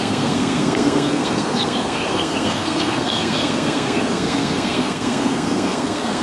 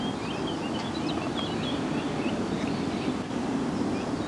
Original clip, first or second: second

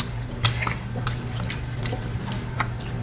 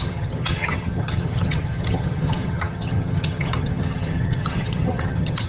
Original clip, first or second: first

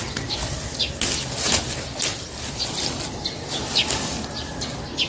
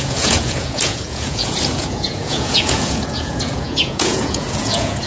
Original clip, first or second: first